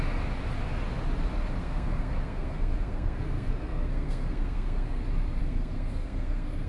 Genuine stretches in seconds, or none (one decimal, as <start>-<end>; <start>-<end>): 0.0-1.6; 5.0-5.4